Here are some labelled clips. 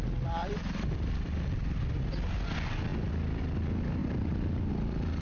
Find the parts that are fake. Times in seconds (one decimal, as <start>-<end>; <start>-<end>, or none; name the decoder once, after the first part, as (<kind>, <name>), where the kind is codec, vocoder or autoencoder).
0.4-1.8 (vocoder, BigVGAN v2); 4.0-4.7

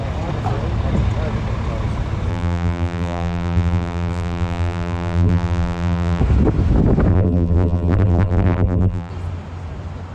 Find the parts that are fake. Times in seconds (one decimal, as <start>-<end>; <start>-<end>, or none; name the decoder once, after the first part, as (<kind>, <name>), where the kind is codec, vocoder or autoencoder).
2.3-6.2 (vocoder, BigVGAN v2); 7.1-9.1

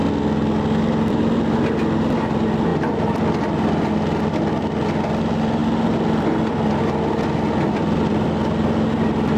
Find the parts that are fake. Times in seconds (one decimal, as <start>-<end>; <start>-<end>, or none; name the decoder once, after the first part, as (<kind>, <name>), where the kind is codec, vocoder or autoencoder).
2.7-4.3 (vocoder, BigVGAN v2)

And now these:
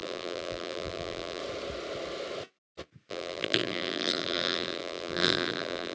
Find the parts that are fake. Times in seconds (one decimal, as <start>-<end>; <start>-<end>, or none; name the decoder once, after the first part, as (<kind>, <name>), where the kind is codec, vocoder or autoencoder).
0.0-1.4 (vocoder, BigVGAN v2); 3.1-5.9

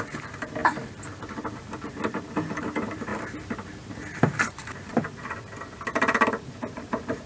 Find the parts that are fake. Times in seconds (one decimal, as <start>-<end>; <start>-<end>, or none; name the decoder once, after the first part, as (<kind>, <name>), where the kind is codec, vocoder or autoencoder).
0.0-3.1 (vocoder, BigVGAN v2); 4.4-4.9; 6.4-7.3

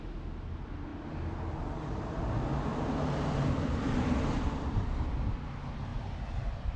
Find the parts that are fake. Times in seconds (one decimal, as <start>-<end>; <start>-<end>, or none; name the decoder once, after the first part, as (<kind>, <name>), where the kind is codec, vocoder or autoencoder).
2.7-4.8 (vocoder, BigVGAN v2); 5.9-6.8

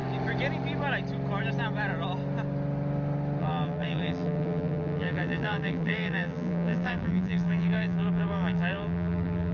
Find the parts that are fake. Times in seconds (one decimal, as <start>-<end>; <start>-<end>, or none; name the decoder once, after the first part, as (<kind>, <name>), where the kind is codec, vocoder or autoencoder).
3.4-9.5 (vocoder, BigVGAN v2)

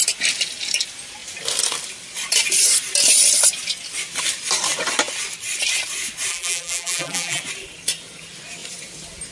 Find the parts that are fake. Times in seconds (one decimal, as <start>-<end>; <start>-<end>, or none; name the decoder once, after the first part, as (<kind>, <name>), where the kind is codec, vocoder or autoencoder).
6.3-7.4 (vocoder, BigVGAN v2)